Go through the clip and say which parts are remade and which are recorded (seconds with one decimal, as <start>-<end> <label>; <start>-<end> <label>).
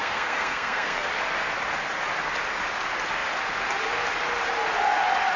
0.0-1.1 remade; 1.1-5.4 recorded